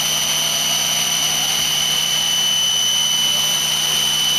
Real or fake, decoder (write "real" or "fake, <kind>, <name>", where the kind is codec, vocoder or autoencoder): real